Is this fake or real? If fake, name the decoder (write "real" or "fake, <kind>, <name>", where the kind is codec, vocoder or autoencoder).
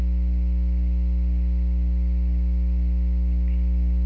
real